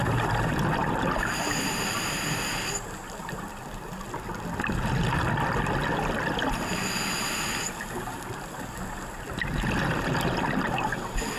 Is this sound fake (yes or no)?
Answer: no